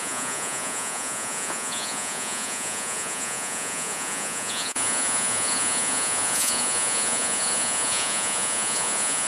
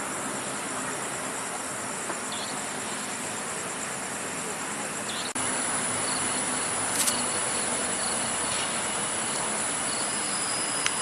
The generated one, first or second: first